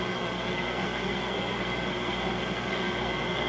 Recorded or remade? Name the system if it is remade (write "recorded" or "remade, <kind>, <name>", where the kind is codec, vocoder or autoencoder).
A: remade, codec, SNAC